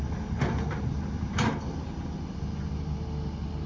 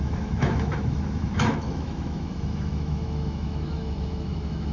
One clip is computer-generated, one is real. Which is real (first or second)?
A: first